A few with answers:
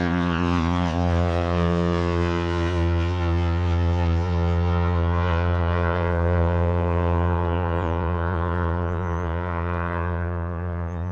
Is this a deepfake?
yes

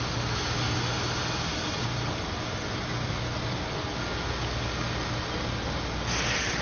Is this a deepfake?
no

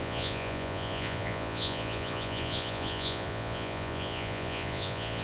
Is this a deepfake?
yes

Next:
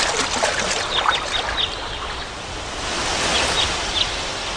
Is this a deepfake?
no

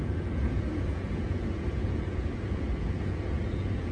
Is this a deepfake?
yes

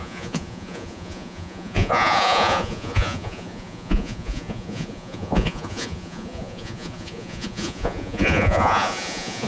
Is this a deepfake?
yes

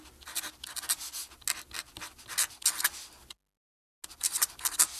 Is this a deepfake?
no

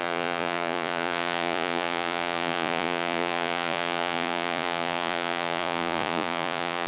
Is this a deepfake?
yes